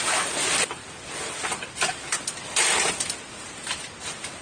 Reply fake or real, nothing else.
real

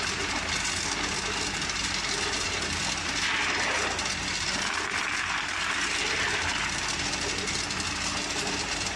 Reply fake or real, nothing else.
real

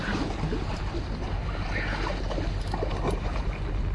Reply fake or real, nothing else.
real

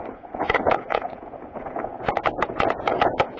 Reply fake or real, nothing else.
fake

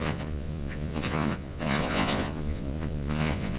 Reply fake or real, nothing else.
fake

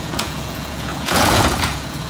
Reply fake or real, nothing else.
fake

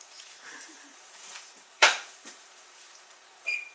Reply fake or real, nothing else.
fake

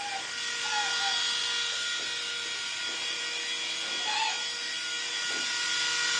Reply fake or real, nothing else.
real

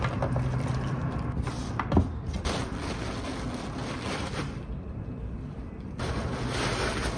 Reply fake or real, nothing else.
real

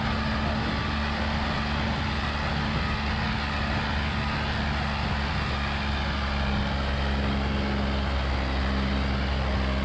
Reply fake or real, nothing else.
real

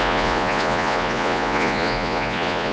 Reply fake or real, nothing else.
fake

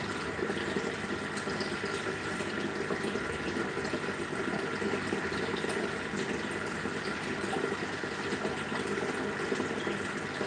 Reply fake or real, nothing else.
real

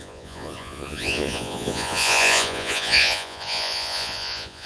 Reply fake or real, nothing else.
fake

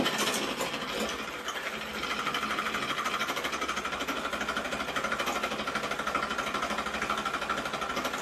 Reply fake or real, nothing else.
real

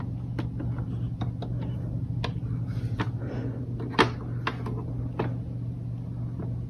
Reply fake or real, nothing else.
real